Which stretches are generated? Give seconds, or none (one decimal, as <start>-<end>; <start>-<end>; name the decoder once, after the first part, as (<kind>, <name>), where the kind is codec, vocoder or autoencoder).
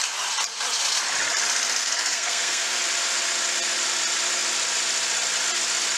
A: 1.8-2.8 (codec, SNAC)